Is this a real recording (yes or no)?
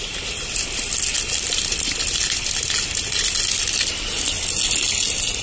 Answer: yes